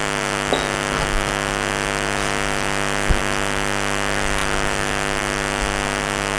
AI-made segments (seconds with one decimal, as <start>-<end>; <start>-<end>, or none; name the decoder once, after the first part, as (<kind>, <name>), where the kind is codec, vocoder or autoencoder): none